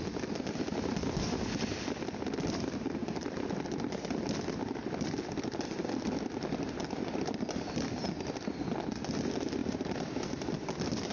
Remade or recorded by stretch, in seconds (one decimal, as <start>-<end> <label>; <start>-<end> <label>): 0.0-9.6 recorded; 9.6-10.5 remade; 10.5-11.1 recorded